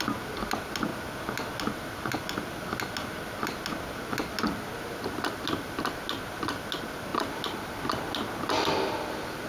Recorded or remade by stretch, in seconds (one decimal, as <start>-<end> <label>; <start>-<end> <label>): 0.0-9.5 recorded